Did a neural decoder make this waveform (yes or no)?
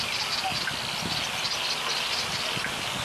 no